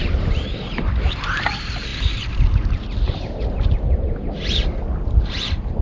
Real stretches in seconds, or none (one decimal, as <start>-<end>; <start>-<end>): 0.0-5.8